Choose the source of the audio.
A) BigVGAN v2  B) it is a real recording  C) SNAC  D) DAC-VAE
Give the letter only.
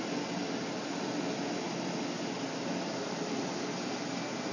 B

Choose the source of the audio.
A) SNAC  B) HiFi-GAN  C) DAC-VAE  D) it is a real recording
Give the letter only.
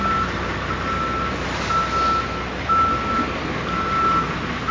D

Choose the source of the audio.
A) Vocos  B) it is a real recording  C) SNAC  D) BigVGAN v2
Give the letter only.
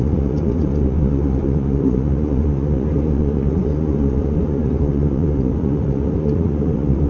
A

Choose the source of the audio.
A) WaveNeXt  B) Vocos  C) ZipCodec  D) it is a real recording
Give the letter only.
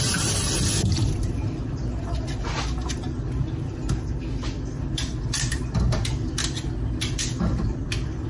D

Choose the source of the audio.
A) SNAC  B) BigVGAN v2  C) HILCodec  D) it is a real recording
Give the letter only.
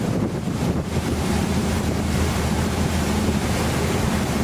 B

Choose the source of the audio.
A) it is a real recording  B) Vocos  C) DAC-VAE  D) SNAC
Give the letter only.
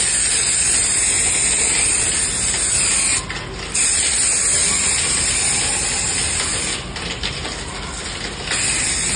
A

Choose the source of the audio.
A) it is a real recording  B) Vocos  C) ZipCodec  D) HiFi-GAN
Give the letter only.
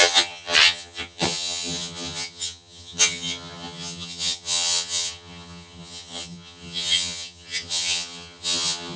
D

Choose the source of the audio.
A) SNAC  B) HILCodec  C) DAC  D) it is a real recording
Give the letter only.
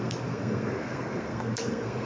A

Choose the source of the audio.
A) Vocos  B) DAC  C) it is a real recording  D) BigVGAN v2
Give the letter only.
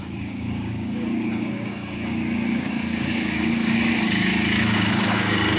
B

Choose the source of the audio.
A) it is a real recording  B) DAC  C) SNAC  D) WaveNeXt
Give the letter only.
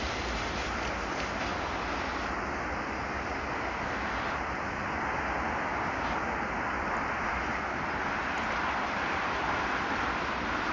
A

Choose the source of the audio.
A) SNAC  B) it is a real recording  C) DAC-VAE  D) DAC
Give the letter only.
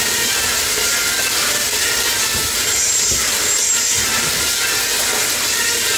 B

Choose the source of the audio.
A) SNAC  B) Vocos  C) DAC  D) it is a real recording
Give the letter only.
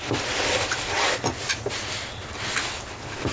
D